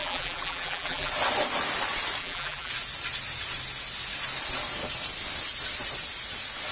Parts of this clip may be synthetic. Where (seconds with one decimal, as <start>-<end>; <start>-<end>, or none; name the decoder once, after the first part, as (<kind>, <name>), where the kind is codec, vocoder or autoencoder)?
0.0-1.1 (vocoder, BigVGAN v2); 2.2-2.7